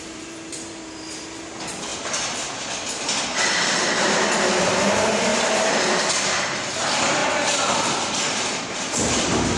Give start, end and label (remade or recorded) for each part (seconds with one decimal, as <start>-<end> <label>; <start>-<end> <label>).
0.0-1.9 remade; 1.9-4.6 recorded; 4.6-5.3 remade; 5.3-6.4 recorded; 6.4-7.2 remade; 7.2-8.2 recorded; 8.2-9.6 remade